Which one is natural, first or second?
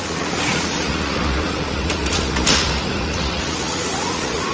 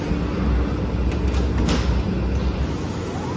second